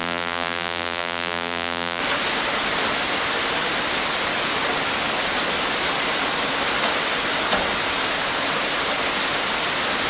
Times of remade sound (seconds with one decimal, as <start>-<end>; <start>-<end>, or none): 0.0-2.0